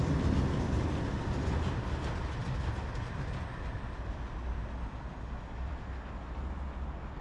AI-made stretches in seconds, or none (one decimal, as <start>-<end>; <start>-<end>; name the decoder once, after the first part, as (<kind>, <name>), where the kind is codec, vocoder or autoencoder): none